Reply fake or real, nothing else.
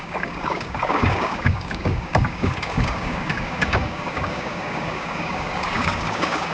fake